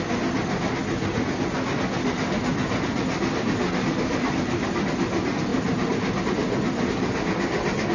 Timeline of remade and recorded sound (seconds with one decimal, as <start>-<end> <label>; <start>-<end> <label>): 0.0-7.9 recorded